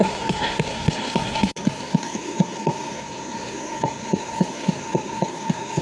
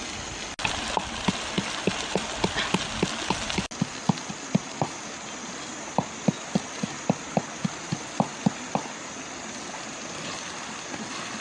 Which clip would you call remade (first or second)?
first